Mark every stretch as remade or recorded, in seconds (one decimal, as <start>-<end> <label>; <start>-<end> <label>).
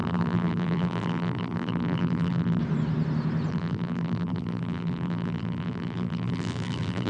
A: 0.0-2.6 remade; 2.6-3.5 recorded; 3.5-7.1 remade